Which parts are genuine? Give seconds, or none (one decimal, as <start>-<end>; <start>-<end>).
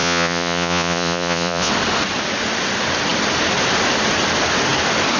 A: 1.7-5.2